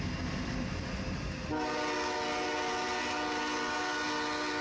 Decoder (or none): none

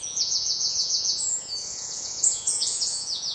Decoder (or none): vocoder, Vocos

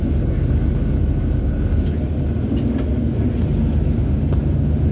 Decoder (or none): none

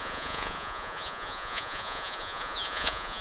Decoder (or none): vocoder, Vocos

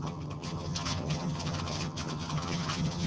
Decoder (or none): vocoder, HiFi-GAN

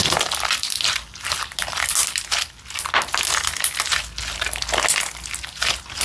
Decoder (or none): none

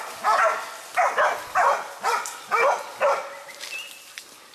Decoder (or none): none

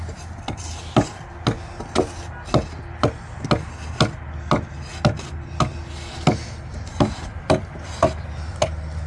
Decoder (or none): none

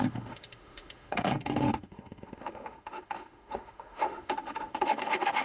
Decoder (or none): autoencoder, DAC-VAE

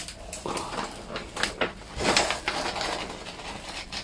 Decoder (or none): none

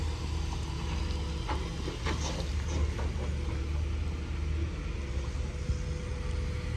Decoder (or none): none